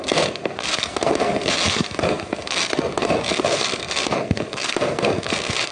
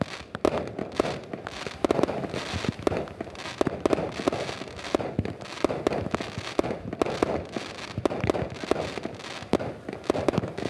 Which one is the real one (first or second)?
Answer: second